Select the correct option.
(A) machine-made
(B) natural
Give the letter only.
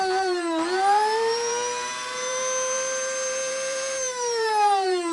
A